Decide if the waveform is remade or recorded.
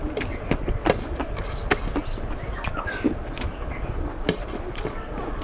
recorded